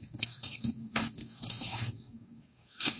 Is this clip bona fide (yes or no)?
no